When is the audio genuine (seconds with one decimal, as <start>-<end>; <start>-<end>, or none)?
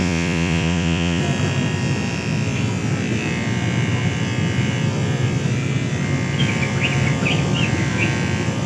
1.2-8.7